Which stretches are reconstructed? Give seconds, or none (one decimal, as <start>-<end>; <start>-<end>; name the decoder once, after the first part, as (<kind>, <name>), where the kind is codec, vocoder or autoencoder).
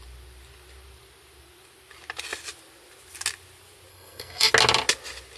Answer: 3.9-4.5 (codec, SNAC)